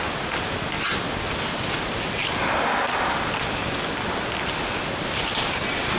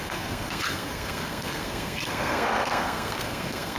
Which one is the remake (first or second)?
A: second